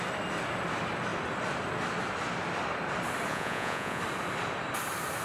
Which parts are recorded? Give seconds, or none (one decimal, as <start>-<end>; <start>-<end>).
0.0-3.3; 4.0-5.2